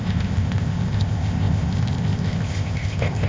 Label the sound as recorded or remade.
remade